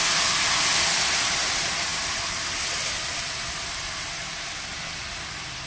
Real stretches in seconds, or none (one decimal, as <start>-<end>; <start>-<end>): 0.0-5.7